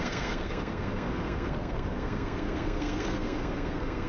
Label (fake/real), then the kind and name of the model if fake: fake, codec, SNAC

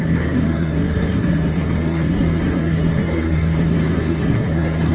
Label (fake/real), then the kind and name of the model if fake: fake, codec, SNAC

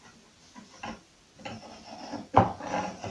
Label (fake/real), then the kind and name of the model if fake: real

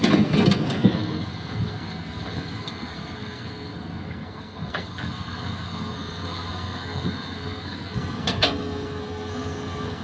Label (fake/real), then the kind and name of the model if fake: fake, codec, SNAC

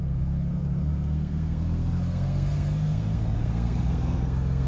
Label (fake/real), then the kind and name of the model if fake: fake, codec, SNAC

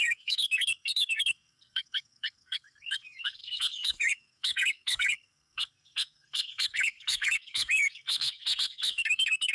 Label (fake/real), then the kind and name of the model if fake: fake, codec, SNAC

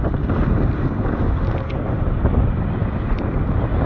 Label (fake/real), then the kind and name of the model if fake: real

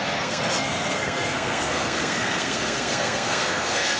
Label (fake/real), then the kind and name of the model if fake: fake, codec, SNAC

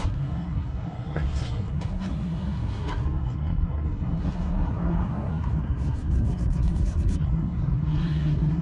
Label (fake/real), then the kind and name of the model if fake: fake, codec, SNAC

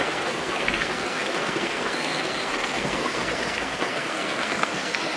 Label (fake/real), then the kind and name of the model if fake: fake, codec, SNAC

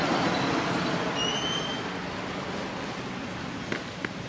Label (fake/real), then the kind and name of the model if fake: real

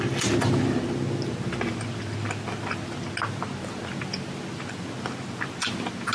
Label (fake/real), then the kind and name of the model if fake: real